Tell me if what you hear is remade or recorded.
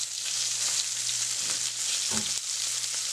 recorded